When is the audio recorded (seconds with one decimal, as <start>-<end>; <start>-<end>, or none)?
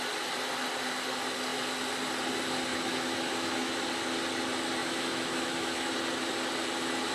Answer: 0.0-2.7; 3.8-4.8; 5.9-7.1